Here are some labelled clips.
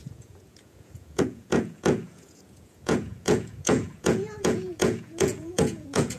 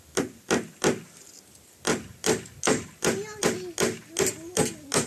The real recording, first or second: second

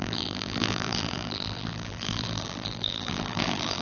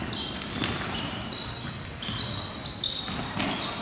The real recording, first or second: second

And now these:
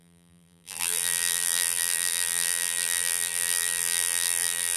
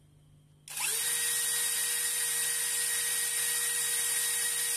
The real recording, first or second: second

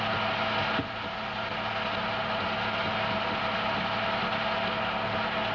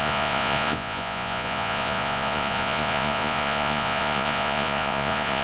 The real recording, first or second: first